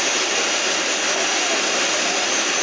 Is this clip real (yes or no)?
yes